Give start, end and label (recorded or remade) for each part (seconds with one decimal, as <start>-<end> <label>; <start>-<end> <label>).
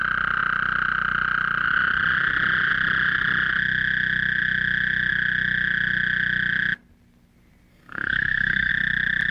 0.0-7.7 recorded; 7.7-8.7 remade; 8.7-9.3 recorded